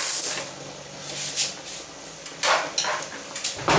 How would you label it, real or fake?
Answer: real